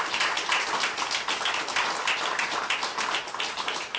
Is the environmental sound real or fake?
real